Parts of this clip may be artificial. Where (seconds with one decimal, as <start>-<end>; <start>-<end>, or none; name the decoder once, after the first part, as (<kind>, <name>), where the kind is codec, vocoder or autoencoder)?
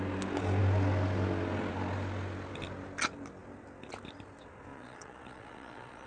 4.7-6.1 (vocoder, Vocos)